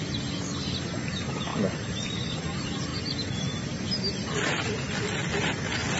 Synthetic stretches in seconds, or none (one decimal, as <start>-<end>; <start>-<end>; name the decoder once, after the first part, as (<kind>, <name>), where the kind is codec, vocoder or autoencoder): 2.9-3.6 (vocoder, Vocos)